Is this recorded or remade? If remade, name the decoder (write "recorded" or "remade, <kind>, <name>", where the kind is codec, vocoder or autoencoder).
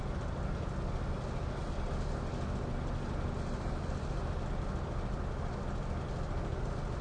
recorded